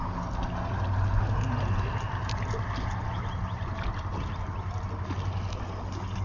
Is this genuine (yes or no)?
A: yes